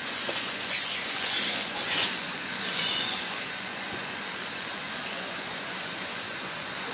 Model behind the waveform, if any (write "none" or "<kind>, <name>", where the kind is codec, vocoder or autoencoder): vocoder, Vocos